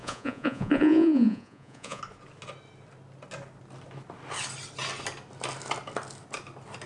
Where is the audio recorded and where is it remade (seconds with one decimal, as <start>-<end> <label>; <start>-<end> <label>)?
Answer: 0.0-2.0 remade; 2.0-6.9 recorded